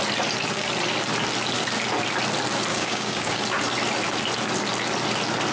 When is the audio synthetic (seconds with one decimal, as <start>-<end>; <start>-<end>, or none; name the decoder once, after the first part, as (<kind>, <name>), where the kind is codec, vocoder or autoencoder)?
2.7-3.4 (codec, DAC)